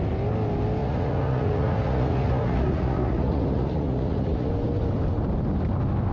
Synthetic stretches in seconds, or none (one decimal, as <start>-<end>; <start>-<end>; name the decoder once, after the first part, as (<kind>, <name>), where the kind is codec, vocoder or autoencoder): 0.8-4.5 (vocoder, Vocos)